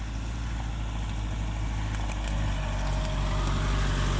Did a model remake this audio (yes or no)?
no